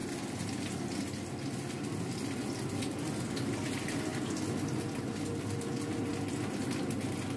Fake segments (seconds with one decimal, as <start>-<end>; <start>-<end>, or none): 0.0-0.9